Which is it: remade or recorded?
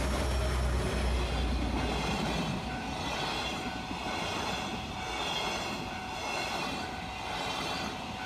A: recorded